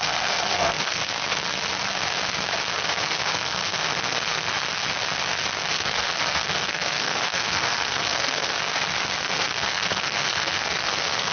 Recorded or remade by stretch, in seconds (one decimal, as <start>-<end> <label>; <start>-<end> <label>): 0.0-1.0 remade; 1.0-2.7 recorded; 2.7-4.5 remade; 4.5-5.7 recorded; 5.7-8.5 remade; 8.5-9.2 recorded; 9.2-11.3 remade